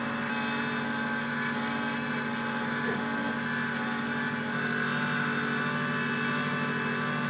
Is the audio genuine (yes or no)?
yes